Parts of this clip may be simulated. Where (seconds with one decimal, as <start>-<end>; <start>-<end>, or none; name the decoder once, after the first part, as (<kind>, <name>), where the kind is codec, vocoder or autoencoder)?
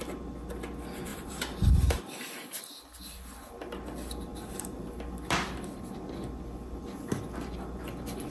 1.1-2.4 (vocoder, BigVGAN v2); 4.3-4.9